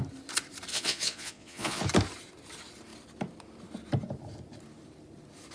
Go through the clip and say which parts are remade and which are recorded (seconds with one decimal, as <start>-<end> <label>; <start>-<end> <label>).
0.0-0.7 recorded; 0.7-1.8 remade; 1.8-5.5 recorded